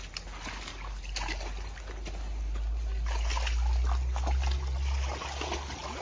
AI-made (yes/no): no